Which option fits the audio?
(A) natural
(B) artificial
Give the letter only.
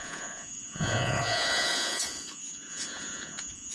B